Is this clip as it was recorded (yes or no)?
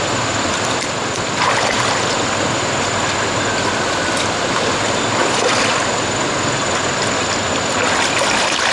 yes